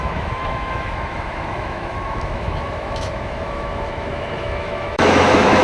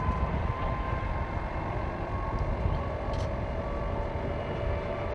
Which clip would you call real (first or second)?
second